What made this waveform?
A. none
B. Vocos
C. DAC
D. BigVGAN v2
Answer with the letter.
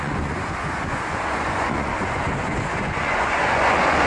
B